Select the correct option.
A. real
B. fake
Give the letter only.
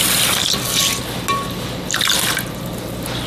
A